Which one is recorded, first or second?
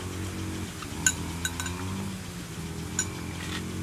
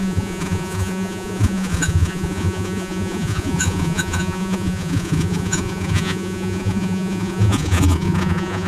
first